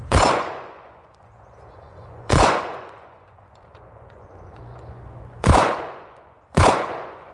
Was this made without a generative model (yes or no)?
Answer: no